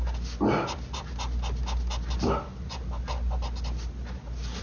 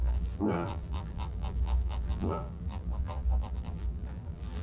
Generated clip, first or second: second